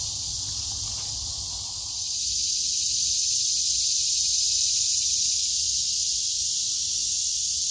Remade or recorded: recorded